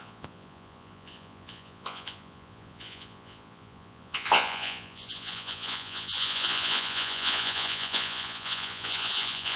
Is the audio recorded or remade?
remade